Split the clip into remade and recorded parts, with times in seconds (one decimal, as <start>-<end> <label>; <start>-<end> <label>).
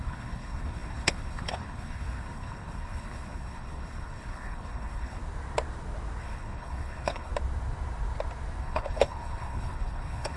0.0-5.2 remade; 5.2-6.2 recorded; 6.2-7.3 remade; 7.3-8.6 recorded; 8.6-10.4 remade